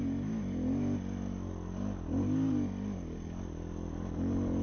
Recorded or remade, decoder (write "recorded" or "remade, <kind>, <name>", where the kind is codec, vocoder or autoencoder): recorded